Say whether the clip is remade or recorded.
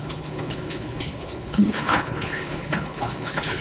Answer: remade